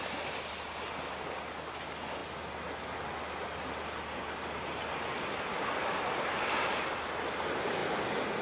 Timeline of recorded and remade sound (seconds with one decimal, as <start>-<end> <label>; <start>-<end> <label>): 0.0-8.4 recorded